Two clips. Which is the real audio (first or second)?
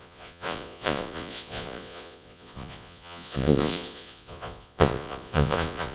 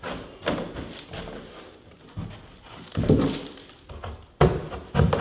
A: second